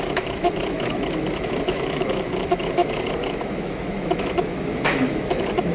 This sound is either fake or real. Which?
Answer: fake